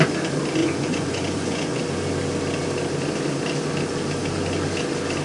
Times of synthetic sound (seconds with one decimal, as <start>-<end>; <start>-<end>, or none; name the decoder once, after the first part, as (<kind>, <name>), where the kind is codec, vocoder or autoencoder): 0.6-1.8 (vocoder, Vocos)